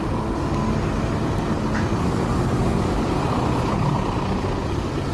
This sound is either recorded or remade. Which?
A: recorded